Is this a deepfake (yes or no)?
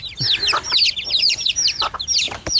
no